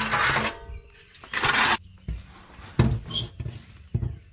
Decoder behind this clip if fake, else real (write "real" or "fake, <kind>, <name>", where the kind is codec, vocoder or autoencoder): real